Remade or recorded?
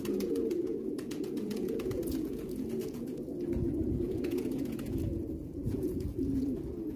remade